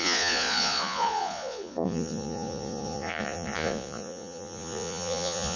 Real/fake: fake